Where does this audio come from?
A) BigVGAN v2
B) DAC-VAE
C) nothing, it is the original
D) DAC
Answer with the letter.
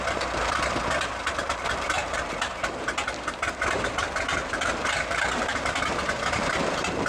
A